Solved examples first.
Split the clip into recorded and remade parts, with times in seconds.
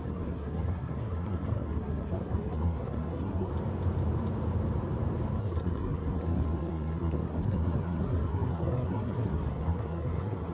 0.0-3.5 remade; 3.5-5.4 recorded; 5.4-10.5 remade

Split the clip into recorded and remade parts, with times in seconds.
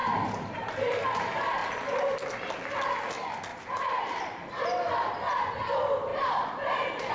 0.0-1.0 remade; 1.0-3.5 recorded; 3.5-4.0 remade; 4.0-6.1 recorded; 6.1-7.1 remade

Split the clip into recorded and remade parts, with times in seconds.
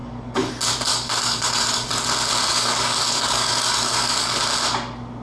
0.0-0.5 remade; 0.5-0.9 recorded; 0.9-1.9 remade; 1.9-2.5 recorded; 2.5-4.4 remade; 4.4-5.2 recorded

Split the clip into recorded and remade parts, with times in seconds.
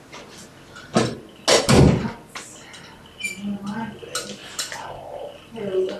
0.0-6.0 recorded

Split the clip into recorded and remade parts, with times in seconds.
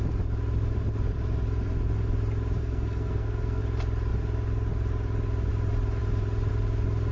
0.0-2.6 recorded; 2.6-3.6 remade; 3.6-7.1 recorded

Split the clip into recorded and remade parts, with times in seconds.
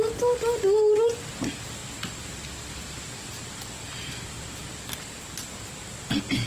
0.0-6.5 recorded